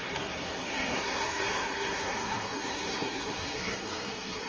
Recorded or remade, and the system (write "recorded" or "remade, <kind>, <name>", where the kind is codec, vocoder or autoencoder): remade, codec, SNAC